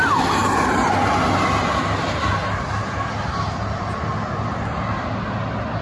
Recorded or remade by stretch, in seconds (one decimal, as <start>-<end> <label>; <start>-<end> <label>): 0.0-5.8 recorded